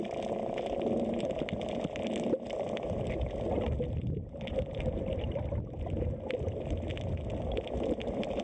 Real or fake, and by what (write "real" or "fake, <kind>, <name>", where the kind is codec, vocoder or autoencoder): real